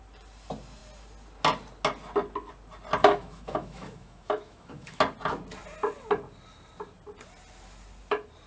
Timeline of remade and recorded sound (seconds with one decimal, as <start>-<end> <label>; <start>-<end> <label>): 0.0-3.0 recorded; 3.0-5.0 remade; 5.0-8.5 recorded